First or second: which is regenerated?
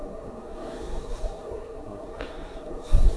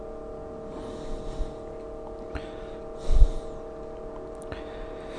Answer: first